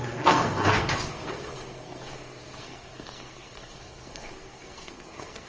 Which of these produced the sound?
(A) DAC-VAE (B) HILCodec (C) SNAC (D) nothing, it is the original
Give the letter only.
C